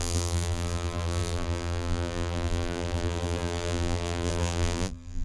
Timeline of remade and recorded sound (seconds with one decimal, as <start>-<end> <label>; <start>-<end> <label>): 0.0-5.2 remade